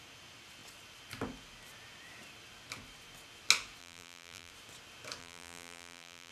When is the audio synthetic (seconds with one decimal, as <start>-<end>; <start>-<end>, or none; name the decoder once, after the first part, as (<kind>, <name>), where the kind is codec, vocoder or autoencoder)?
3.8-4.5 (vocoder, BigVGAN v2); 5.2-6.3